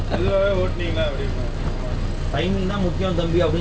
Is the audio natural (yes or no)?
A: yes